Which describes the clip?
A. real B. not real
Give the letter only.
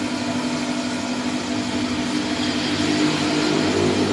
A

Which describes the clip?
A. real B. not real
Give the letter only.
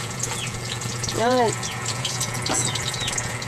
B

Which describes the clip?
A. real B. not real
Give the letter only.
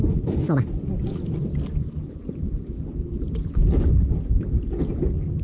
A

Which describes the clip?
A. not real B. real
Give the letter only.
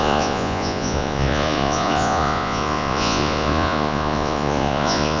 A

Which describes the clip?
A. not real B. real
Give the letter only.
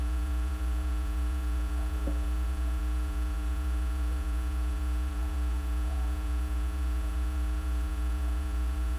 A